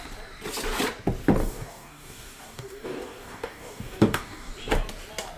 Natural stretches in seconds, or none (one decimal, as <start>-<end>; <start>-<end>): 0.0-1.4; 4.5-5.4